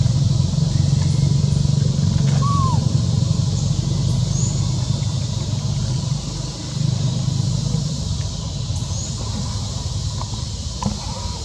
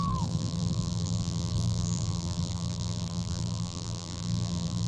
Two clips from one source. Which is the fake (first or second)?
second